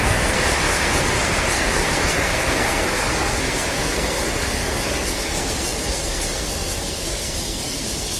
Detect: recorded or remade remade